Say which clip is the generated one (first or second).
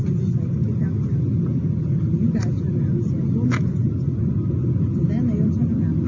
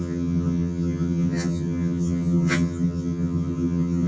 second